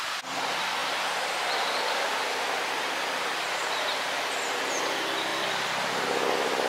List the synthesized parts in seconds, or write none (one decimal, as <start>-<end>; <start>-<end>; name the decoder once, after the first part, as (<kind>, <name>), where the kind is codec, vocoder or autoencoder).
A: none